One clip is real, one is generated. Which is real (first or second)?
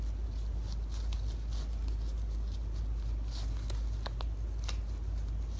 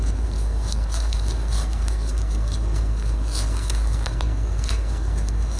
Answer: first